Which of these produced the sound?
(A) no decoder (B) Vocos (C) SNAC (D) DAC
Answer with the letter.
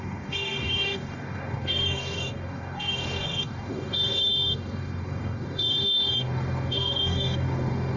D